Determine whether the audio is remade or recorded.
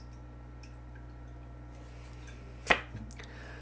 recorded